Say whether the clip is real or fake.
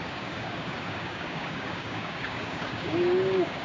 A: fake